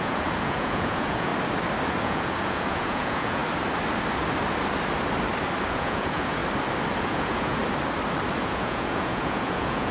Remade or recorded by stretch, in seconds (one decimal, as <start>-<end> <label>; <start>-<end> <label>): 0.0-1.3 remade; 1.3-2.0 recorded; 2.0-3.4 remade; 3.4-5.7 recorded; 5.7-6.4 remade; 6.4-7.0 recorded; 7.0-7.6 remade; 7.6-8.4 recorded; 8.4-9.9 remade